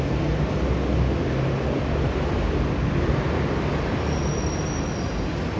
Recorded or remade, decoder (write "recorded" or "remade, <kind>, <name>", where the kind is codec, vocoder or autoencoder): recorded